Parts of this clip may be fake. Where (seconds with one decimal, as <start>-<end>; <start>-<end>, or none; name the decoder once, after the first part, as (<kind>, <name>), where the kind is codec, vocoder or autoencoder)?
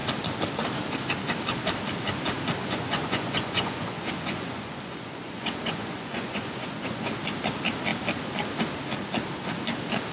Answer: 2.6-7.1 (vocoder, Vocos)